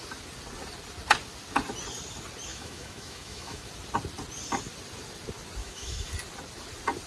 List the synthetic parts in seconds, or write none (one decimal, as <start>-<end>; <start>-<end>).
2.5-3.7; 5.6-6.1